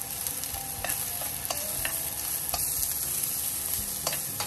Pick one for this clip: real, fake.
real